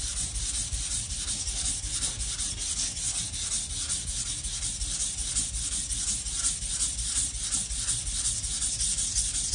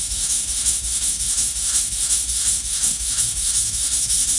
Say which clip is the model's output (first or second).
second